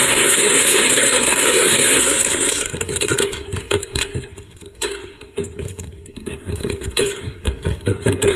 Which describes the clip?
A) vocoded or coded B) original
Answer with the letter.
A